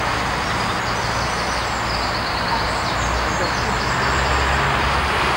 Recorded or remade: recorded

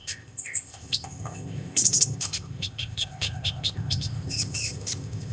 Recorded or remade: remade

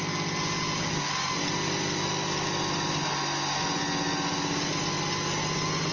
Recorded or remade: recorded